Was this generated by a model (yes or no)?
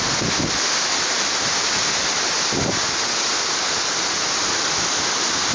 no